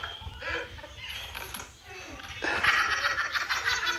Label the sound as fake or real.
real